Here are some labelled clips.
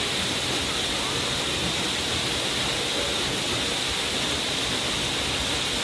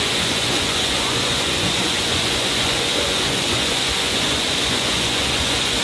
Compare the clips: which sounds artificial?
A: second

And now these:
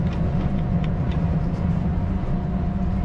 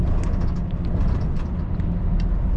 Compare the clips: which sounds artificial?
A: first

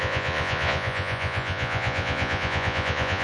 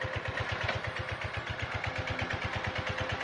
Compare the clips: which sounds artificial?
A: first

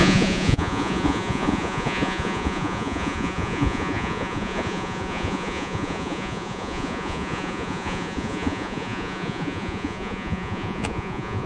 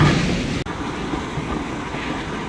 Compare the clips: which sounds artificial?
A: first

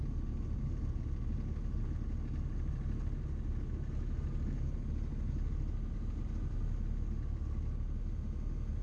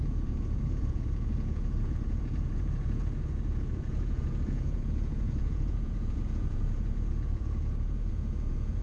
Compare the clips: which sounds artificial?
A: second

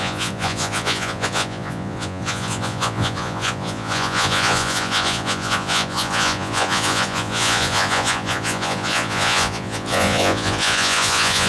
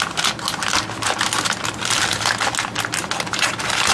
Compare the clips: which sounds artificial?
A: first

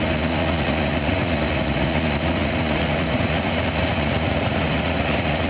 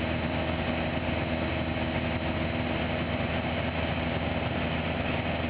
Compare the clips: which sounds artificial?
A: first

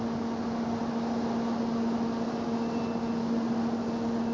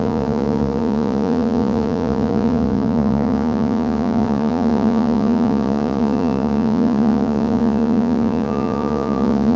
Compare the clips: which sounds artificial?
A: second